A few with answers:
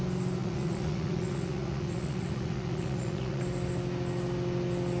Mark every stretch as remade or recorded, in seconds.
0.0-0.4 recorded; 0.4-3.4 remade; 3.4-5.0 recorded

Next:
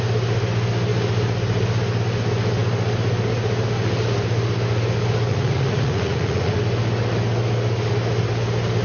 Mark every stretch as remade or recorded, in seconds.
0.0-5.3 recorded; 5.3-6.6 remade; 6.6-8.8 recorded